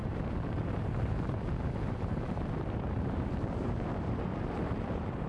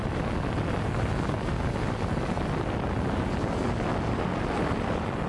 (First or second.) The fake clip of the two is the first